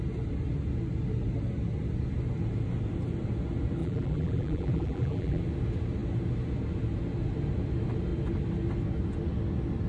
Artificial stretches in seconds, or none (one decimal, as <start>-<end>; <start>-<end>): 3.8-5.4